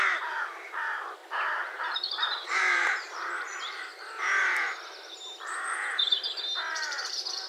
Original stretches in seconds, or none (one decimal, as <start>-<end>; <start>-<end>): 1.2-1.7; 3.9-6.7